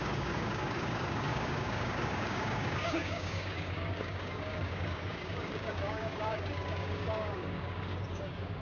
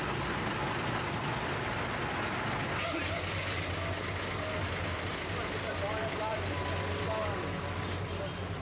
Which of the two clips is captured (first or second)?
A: second